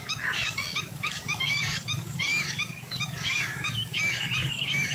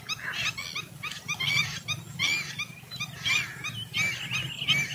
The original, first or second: second